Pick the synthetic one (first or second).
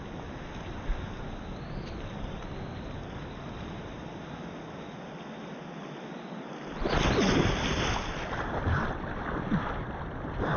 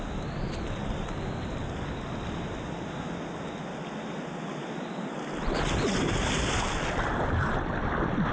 first